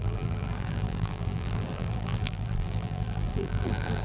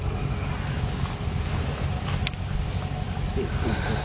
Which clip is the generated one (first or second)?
first